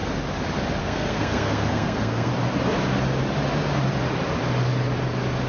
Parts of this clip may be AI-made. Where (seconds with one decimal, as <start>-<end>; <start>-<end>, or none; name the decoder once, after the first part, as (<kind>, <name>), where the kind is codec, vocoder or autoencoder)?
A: 0.8-2.3 (codec, SNAC)